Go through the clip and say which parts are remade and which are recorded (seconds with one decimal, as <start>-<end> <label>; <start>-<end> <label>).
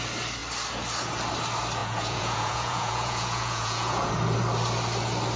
0.0-1.8 recorded; 1.8-4.1 remade; 4.1-5.4 recorded